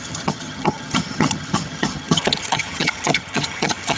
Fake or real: fake